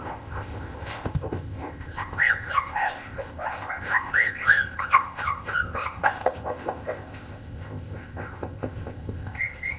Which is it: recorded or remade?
remade